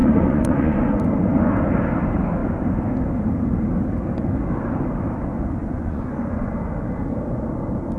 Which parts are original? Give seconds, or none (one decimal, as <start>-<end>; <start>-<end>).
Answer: 1.0-5.6; 6.5-8.0